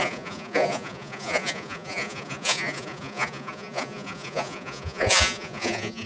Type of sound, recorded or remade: remade